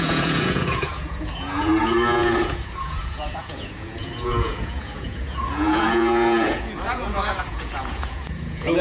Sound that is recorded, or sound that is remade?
remade